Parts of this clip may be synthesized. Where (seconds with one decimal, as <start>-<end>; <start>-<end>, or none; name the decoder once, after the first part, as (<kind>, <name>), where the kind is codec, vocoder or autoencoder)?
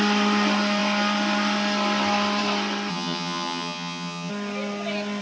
2.9-4.3 (vocoder, HiFi-GAN)